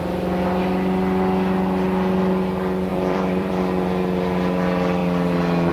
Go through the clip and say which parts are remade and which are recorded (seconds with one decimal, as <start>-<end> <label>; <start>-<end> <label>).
0.0-2.9 recorded; 2.9-3.6 remade; 3.6-5.7 recorded